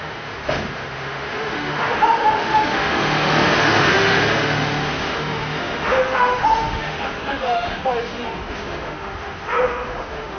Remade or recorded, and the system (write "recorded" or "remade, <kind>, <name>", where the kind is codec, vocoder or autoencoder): remade, autoencoder, DAC-VAE